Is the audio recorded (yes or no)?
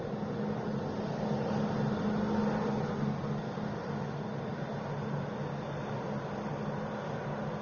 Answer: yes